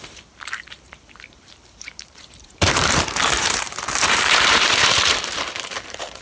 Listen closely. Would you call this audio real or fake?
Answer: fake